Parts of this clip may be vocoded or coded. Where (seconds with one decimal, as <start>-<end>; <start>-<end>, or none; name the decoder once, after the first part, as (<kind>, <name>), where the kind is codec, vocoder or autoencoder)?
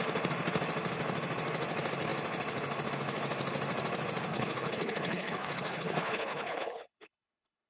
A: 4.3-7.7 (codec, HILCodec)